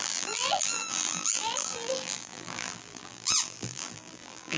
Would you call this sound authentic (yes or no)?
no